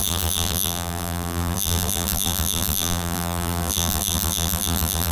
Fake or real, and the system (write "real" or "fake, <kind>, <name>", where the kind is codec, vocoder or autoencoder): fake, vocoder, BigVGAN v2